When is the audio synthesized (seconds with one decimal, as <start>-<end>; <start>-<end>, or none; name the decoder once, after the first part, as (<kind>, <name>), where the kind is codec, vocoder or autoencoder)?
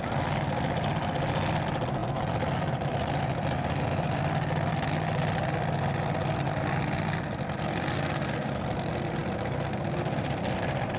none